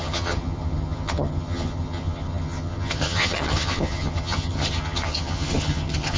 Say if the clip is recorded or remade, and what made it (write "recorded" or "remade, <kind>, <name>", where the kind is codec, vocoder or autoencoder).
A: remade, vocoder, HiFi-GAN